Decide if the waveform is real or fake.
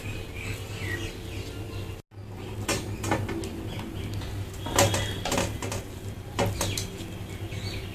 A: real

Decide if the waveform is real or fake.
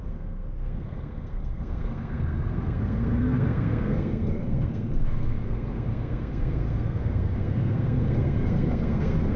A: fake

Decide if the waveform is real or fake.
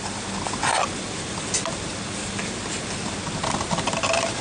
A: real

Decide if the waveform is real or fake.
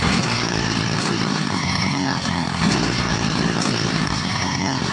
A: fake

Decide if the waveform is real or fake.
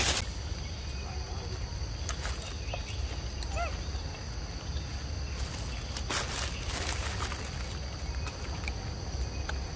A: real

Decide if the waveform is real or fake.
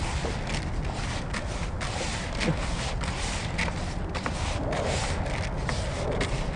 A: real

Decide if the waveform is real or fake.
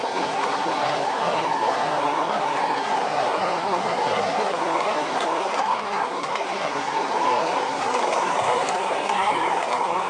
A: fake